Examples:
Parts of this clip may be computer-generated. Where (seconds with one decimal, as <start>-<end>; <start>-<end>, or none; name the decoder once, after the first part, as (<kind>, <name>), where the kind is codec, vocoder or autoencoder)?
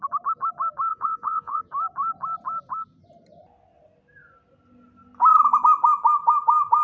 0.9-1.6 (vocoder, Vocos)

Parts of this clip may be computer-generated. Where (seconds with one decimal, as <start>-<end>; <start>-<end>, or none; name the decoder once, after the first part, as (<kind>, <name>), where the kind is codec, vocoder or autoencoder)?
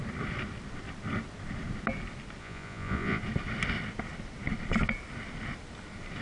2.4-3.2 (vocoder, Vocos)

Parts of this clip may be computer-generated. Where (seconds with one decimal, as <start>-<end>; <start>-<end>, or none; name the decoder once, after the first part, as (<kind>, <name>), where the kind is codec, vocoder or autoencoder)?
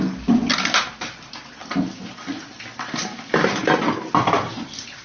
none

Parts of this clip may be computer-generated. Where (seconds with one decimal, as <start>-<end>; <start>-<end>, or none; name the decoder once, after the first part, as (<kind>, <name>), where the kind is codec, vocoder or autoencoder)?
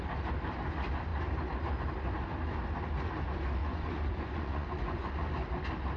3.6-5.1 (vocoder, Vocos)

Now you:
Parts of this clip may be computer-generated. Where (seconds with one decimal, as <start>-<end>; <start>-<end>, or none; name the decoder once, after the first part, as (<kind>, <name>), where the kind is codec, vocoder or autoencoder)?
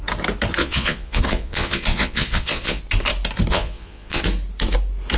0.6-2.8 (vocoder, Vocos); 3.5-4.2